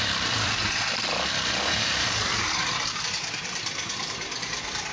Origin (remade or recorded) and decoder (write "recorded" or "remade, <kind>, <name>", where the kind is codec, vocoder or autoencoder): remade, vocoder, BigVGAN v2